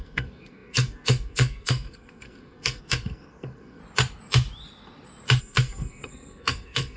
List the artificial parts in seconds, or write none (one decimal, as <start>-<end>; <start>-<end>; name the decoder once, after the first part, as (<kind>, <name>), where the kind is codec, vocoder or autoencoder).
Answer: 0.0-3.8 (codec, SNAC); 5.4-7.0